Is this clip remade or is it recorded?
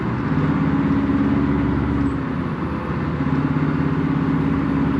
recorded